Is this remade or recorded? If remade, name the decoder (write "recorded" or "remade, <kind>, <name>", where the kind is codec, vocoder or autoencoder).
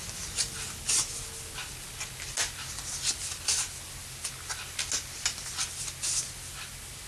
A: recorded